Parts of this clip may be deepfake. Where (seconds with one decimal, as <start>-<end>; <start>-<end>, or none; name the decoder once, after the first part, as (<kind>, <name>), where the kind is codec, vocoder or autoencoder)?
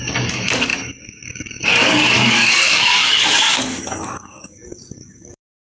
0.0-5.7 (codec, DAC)